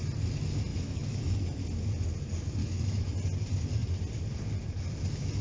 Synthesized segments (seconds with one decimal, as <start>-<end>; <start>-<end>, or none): 0.7-1.3; 2.6-3.1